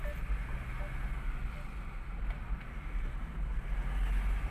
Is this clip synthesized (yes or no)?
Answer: no